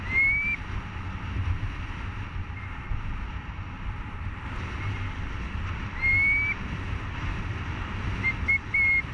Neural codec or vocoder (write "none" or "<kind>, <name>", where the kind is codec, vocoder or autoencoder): none